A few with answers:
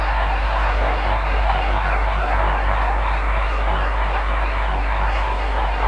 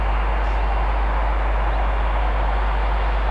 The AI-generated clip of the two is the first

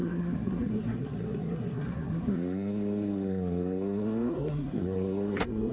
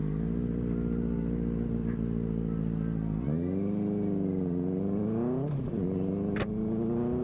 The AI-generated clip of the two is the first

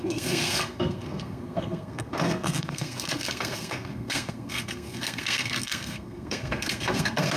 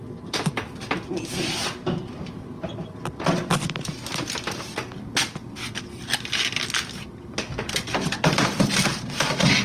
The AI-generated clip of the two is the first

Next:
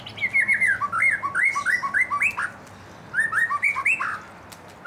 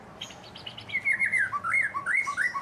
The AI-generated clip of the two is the second